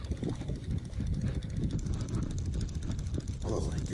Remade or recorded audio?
recorded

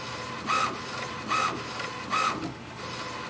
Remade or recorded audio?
recorded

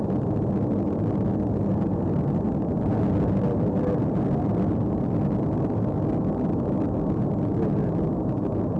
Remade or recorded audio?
recorded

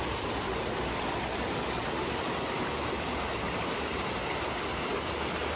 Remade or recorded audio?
remade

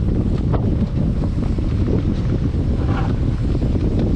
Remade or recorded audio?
recorded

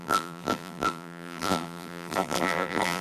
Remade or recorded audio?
remade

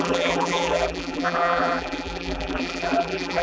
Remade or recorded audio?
remade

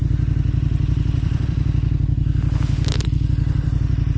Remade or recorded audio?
remade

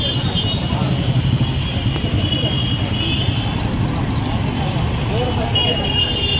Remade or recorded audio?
recorded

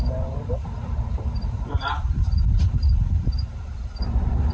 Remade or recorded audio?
remade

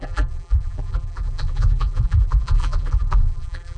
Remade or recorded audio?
remade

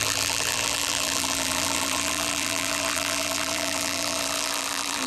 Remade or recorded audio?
remade